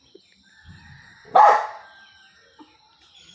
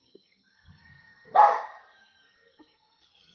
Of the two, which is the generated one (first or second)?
second